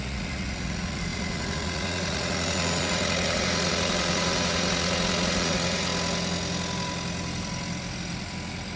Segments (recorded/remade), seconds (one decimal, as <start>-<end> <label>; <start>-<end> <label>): 0.0-5.9 remade; 5.9-8.8 recorded